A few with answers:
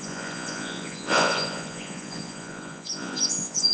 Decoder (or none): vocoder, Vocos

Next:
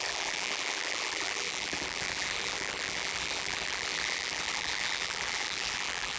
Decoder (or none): vocoder, BigVGAN v2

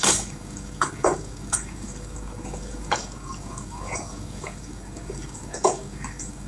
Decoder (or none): codec, DAC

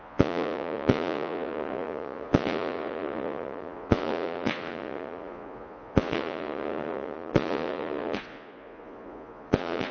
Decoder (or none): vocoder, Vocos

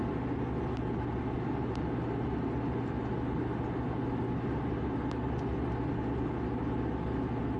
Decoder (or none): none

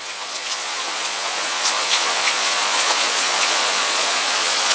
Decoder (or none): vocoder, Vocos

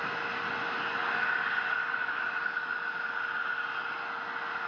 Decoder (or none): none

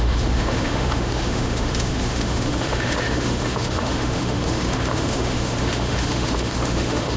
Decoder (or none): autoencoder, DAC-VAE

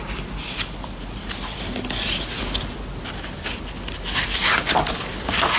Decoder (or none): none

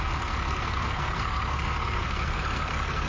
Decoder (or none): codec, SNAC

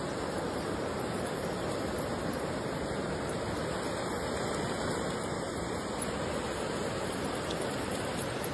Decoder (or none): none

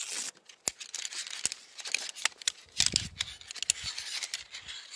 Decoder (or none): none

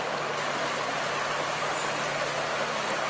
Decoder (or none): none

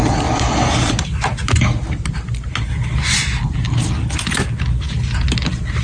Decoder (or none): none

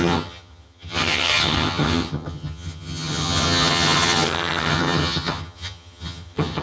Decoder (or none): vocoder, HiFi-GAN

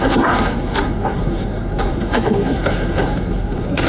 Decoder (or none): codec, SNAC